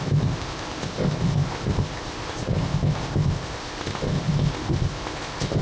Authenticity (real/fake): fake